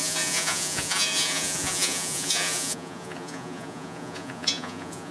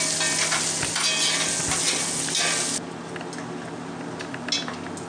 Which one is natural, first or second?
second